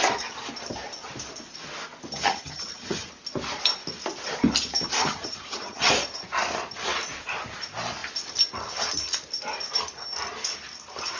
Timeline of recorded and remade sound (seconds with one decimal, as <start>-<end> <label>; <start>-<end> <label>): 0.0-2.2 recorded; 2.2-3.1 remade; 3.1-5.0 recorded; 5.0-5.9 remade; 5.9-11.2 recorded